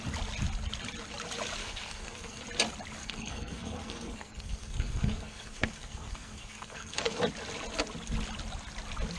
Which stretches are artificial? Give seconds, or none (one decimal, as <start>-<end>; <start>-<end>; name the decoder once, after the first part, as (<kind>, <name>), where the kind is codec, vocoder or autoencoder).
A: 1.6-2.4 (codec, SNAC); 3.0-7.2